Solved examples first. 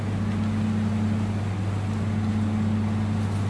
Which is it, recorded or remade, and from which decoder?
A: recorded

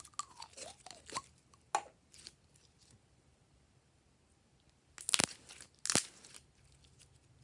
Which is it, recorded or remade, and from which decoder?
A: recorded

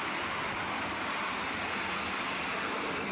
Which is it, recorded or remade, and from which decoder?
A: recorded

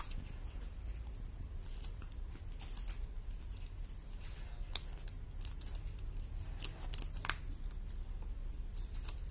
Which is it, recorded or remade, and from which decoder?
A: recorded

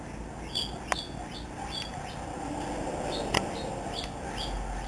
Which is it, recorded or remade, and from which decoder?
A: recorded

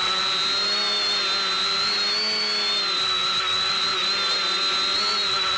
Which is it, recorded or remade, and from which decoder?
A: recorded